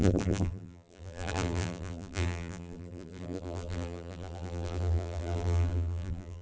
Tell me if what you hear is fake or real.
fake